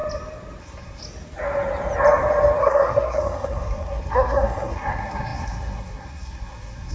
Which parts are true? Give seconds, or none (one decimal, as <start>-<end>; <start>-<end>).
0.0-0.6; 1.0-2.6